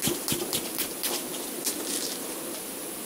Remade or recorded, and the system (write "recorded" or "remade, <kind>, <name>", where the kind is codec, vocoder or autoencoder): recorded